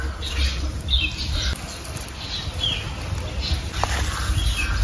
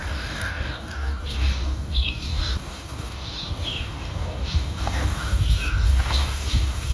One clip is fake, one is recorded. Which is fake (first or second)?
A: second